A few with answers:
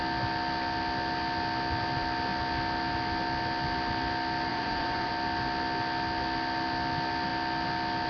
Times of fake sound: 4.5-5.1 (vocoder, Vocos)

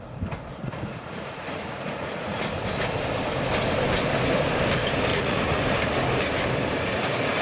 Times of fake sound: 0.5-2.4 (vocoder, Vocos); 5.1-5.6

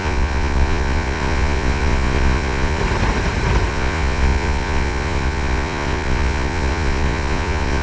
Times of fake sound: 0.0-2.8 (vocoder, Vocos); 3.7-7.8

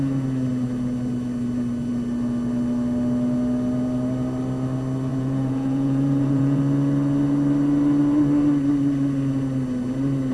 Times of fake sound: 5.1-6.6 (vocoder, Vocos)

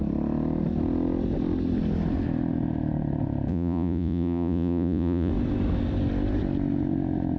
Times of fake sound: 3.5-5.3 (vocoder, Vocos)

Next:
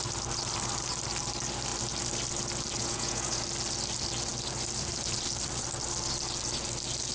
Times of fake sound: 2.8-3.4 (vocoder, Vocos)